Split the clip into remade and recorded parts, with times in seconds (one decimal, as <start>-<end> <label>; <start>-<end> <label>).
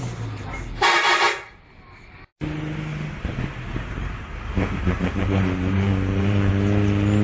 0.0-2.9 recorded; 2.9-6.5 remade; 6.5-7.2 recorded